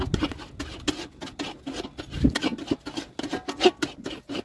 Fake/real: real